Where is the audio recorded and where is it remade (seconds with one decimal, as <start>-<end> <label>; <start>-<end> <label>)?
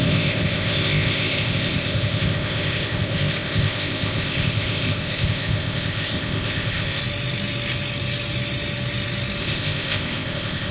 0.0-7.0 remade; 7.0-9.4 recorded; 9.4-10.7 remade